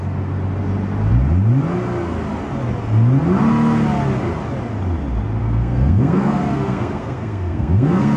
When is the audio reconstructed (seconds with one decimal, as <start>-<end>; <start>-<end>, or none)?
5.4-8.2

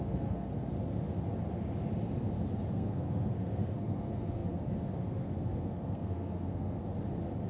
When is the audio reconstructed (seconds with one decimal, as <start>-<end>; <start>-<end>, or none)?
0.0-0.5; 2.7-6.8

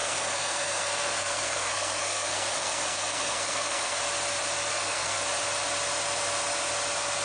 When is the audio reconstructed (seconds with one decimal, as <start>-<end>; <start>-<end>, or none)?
0.0-4.0; 4.7-5.2

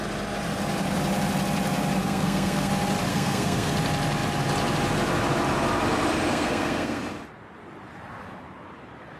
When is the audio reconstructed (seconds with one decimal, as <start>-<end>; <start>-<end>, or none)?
2.0-2.7; 3.1-3.7; 6.3-7.0

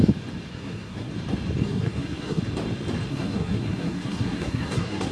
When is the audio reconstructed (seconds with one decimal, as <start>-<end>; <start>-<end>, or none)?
0.5-1.1; 1.6-2.4; 3.1-5.1

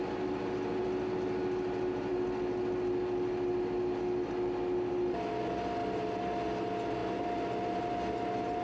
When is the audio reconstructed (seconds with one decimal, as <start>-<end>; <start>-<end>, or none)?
none